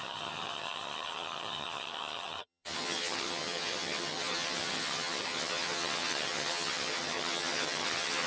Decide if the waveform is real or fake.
fake